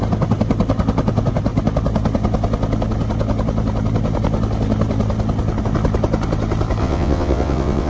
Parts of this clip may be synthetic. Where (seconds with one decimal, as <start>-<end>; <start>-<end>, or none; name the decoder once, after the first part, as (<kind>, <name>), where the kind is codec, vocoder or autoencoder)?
6.8-7.9 (vocoder, WaveNeXt)